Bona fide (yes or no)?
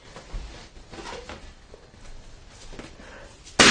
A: yes